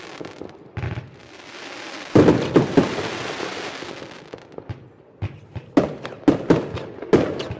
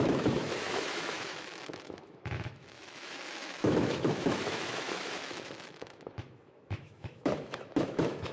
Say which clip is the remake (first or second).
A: second